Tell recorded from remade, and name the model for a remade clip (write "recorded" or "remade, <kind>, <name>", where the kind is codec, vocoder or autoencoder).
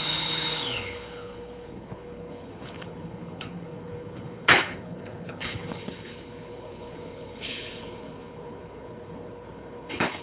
remade, codec, HILCodec